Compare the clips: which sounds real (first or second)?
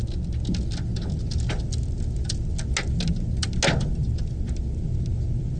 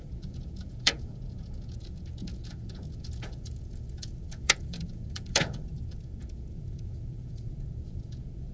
first